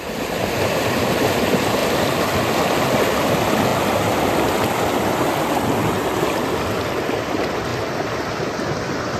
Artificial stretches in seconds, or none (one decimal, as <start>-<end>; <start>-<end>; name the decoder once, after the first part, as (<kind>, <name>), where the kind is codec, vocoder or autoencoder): none